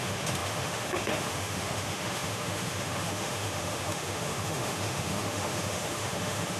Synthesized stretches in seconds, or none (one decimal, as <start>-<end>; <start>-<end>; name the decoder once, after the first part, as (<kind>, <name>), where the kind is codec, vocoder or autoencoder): 0.0-6.6 (autoencoder, DAC-VAE)